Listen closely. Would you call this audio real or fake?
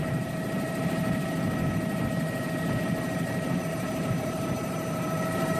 fake